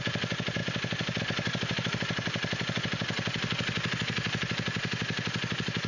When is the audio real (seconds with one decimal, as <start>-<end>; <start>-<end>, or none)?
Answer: 0.0-5.9